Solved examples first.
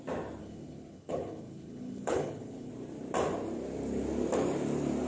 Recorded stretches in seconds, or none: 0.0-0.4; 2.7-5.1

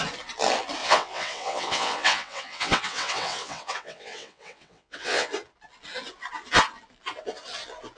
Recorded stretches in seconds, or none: 0.0-0.8; 5.3-8.0

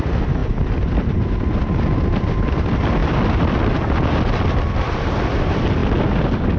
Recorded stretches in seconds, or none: 0.0-0.4; 2.6-6.6